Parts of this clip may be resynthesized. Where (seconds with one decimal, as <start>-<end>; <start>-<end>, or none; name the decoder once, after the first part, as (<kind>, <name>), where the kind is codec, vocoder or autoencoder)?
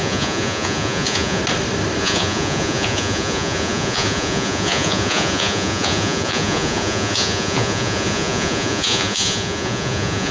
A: 0.0-1.4 (vocoder, Vocos); 2.0-10.3